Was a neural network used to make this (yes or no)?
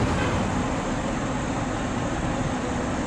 no